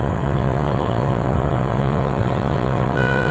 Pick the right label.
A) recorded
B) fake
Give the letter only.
B